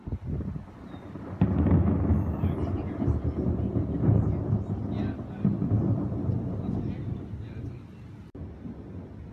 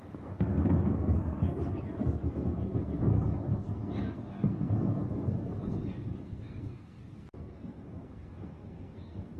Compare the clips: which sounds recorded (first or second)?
first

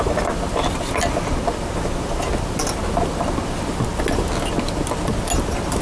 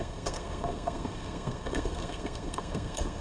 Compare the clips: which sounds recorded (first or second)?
first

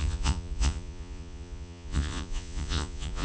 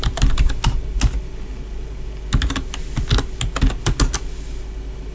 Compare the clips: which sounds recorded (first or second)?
second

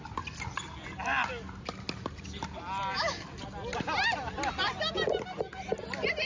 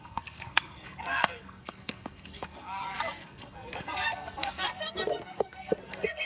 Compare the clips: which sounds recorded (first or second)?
first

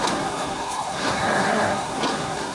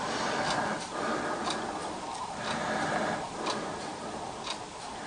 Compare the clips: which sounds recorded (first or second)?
second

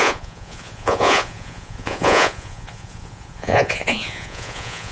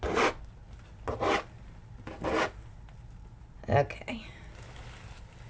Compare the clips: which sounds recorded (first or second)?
second